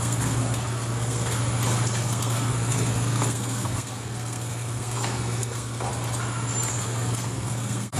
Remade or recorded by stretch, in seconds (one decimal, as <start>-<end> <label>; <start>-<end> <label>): 0.0-1.4 remade; 1.4-2.0 recorded; 2.0-5.9 remade; 5.9-6.7 recorded; 6.7-8.0 remade